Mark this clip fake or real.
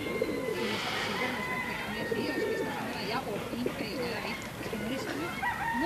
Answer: real